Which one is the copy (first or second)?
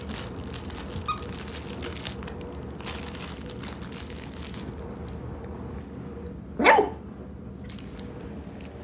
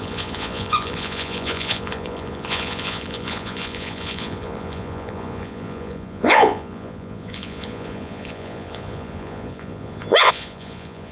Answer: second